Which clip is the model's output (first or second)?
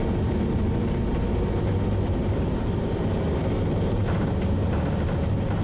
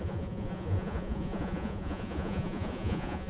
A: second